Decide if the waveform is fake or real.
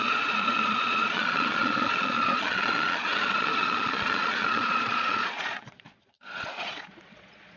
fake